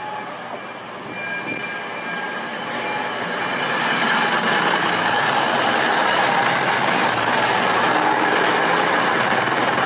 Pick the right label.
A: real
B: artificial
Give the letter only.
A